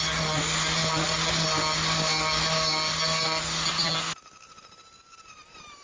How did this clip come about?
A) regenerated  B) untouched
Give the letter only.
B